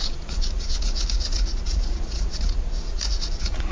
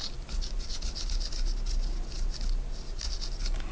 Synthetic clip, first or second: first